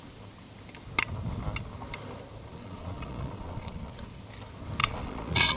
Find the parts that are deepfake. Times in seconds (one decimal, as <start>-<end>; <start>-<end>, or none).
2.5-4.2; 4.8-5.6